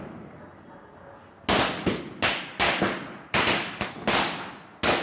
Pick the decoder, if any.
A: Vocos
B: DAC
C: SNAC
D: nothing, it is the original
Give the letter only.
D